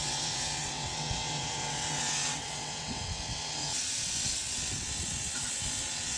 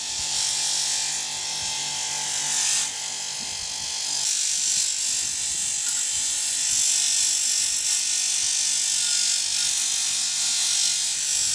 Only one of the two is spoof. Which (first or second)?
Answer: first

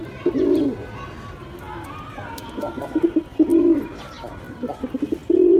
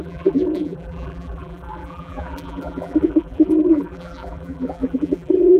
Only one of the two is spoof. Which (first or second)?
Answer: second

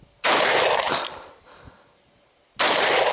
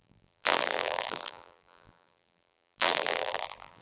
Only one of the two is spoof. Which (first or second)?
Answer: second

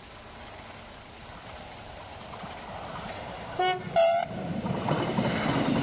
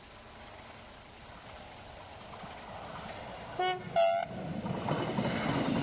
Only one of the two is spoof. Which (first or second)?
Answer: first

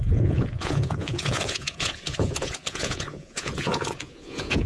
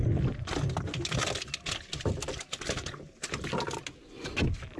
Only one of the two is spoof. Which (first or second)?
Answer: first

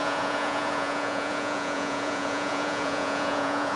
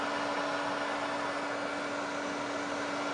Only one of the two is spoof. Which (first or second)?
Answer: first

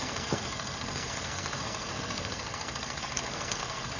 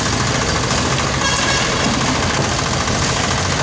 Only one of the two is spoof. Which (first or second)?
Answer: first